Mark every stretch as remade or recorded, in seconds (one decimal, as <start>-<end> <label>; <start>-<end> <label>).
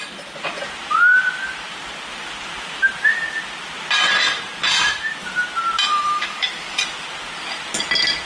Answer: 0.0-5.9 recorded; 5.9-6.8 remade; 6.8-8.3 recorded